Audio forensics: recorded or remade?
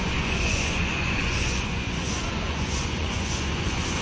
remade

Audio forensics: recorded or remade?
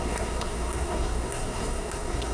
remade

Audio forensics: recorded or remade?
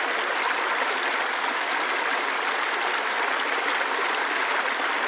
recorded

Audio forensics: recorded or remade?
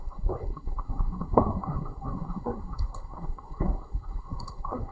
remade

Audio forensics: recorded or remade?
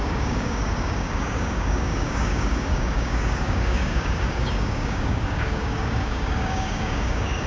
remade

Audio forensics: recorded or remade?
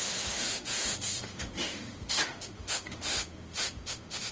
remade